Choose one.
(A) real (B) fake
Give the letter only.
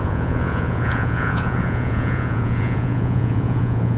B